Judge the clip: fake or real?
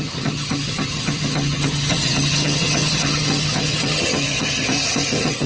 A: fake